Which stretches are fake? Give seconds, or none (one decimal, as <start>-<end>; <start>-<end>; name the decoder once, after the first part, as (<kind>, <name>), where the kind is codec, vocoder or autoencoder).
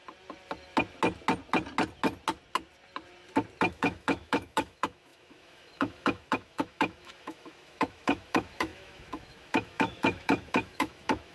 3.7-11.3 (autoencoder, DAC-VAE)